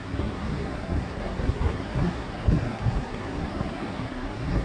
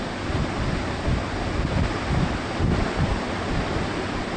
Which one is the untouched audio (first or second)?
second